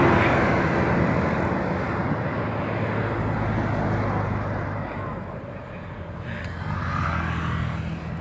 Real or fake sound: real